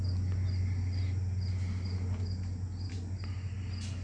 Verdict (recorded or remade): recorded